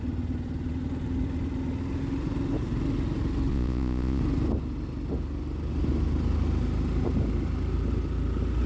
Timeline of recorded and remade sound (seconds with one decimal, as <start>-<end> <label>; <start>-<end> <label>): 0.0-3.5 recorded; 3.5-4.2 remade; 4.2-8.7 recorded